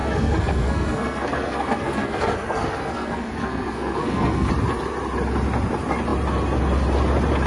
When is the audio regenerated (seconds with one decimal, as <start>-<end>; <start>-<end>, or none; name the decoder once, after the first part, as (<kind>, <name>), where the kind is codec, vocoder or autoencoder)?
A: 0.0-4.5 (codec, SNAC)